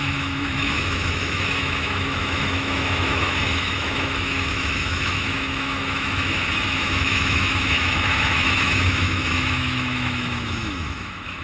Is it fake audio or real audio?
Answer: fake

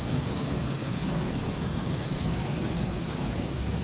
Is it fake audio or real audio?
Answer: fake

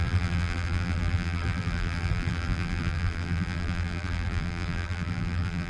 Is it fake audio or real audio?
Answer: fake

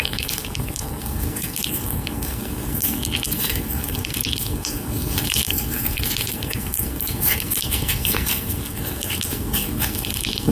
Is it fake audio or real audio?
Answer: fake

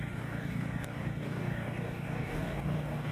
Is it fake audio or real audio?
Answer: fake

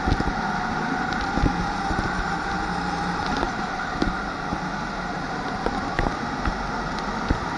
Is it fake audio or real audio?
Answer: real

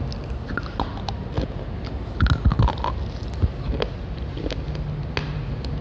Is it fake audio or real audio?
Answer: real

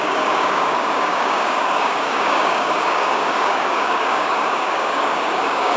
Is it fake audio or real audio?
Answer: fake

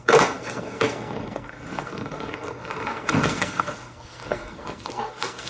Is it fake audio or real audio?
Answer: fake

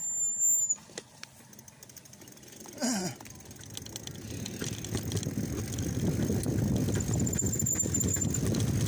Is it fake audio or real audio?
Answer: real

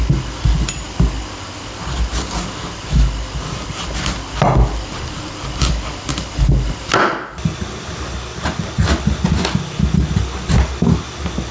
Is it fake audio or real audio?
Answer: real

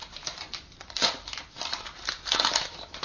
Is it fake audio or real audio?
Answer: fake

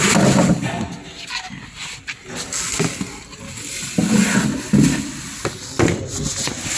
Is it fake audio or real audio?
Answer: real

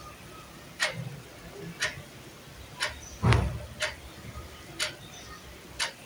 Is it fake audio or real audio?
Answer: real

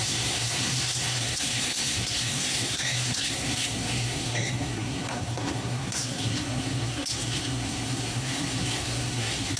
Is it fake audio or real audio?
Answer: fake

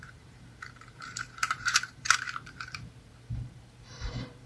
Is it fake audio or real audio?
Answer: fake